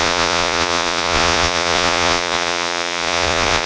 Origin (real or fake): fake